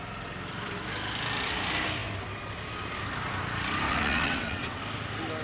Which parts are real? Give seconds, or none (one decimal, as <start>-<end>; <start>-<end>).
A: 0.0-3.9; 4.8-5.4